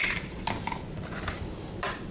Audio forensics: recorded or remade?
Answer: recorded